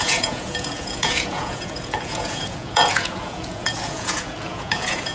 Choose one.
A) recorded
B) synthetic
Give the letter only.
B